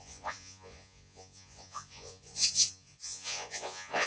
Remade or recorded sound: remade